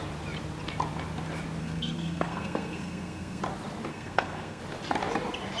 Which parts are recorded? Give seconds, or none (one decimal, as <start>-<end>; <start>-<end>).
0.0-1.6; 3.4-3.9; 4.6-5.6